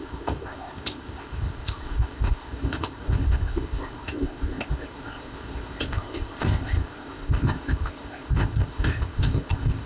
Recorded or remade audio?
remade